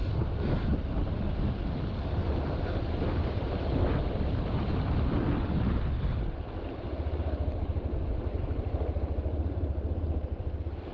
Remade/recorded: remade